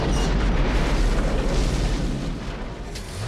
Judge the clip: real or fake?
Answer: real